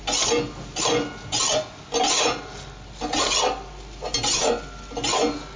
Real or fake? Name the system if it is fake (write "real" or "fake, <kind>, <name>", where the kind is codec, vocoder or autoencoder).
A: real